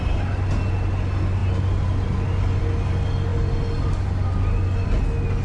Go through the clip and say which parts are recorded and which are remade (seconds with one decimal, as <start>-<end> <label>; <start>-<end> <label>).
0.0-5.4 recorded